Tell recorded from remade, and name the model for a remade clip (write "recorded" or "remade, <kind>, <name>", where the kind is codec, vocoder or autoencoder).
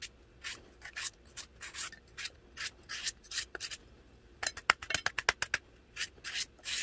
recorded